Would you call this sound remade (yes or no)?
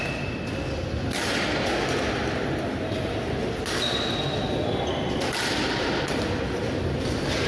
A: no